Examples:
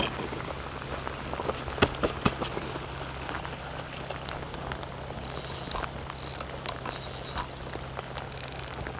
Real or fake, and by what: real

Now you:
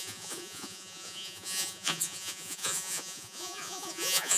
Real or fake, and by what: fake, vocoder, Vocos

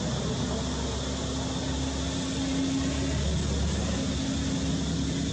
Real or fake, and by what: real